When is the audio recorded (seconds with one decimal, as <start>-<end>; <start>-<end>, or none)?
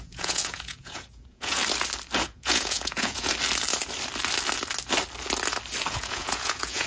1.6-2.2; 3.3-5.9